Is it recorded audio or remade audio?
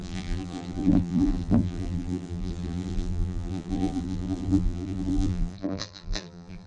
remade